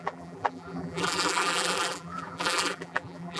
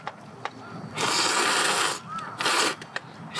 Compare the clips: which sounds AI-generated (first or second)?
first